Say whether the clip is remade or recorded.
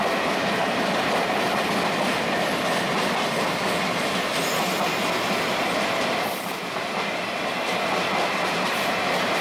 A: recorded